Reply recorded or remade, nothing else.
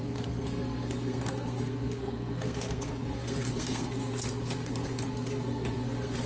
remade